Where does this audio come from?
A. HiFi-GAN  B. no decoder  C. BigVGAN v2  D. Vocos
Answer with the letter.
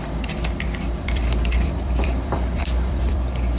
C